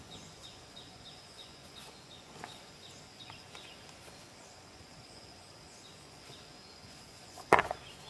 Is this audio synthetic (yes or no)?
yes